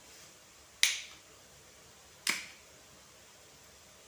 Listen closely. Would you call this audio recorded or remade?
recorded